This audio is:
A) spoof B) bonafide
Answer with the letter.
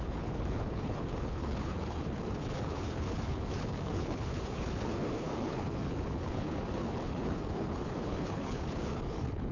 A